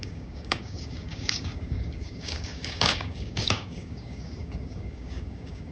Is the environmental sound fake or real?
fake